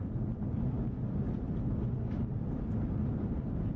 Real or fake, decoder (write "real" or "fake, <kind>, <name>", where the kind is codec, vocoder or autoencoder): real